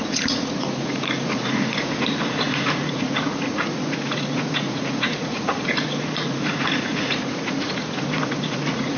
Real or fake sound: fake